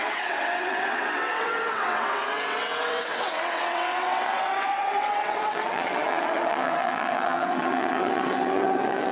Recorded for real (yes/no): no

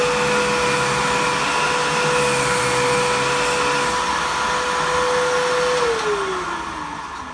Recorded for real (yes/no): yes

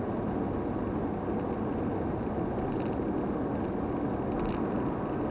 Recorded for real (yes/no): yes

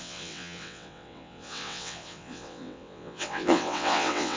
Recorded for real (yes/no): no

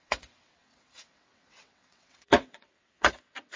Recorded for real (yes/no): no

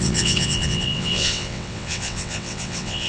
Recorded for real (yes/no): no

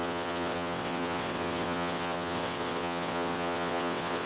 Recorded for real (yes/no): no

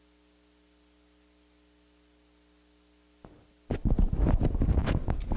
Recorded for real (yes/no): yes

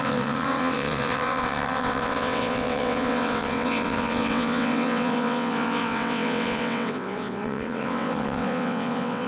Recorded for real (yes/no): no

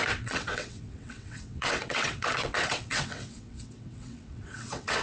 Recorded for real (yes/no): no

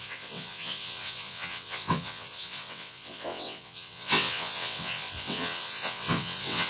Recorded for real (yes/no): no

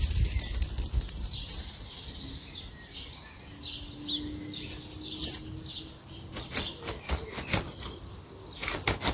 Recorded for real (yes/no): yes